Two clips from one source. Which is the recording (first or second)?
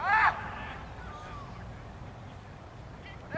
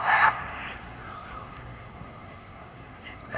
first